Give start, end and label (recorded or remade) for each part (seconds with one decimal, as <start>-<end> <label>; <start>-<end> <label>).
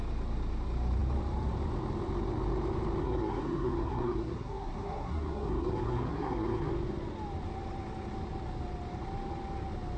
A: 0.0-3.0 recorded; 3.0-6.7 remade; 6.7-10.0 recorded